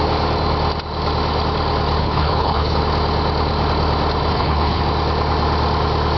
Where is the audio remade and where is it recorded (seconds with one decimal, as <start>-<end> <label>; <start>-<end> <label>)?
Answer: 0.0-2.0 recorded; 2.0-2.8 remade; 2.8-4.3 recorded; 4.3-4.8 remade; 4.8-6.2 recorded